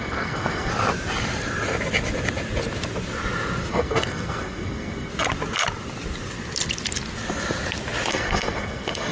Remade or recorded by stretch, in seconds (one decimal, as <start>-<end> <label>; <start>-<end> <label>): 0.0-0.7 remade; 0.7-3.7 recorded; 3.7-5.1 remade; 5.1-8.1 recorded; 8.1-9.1 remade